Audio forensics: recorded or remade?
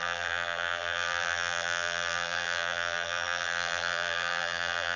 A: remade